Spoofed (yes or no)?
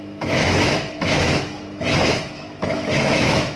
yes